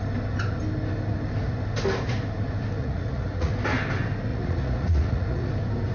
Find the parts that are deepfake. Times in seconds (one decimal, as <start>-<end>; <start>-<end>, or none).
2.8-3.5; 4.3-5.5